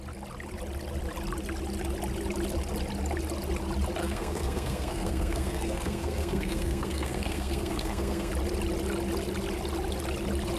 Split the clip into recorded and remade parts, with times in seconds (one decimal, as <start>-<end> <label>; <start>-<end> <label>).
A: 0.0-4.0 recorded; 4.0-8.3 remade; 8.3-10.6 recorded